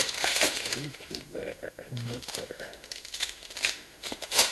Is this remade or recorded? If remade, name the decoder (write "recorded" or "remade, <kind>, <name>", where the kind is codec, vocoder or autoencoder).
remade, autoencoder, DAC-VAE